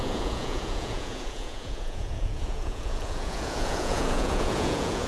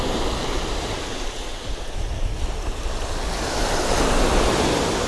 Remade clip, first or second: first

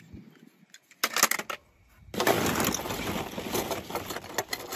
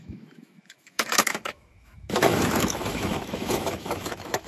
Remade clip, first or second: second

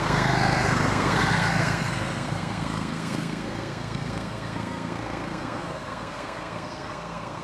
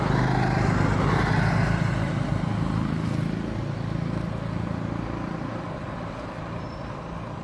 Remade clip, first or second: first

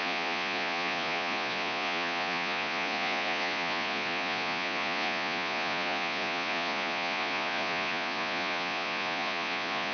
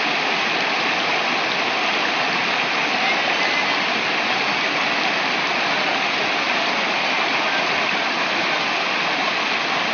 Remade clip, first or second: first